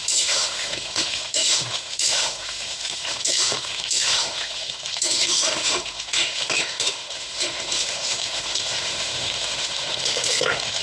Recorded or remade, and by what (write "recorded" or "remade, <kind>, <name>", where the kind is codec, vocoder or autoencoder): remade, autoencoder, DAC-VAE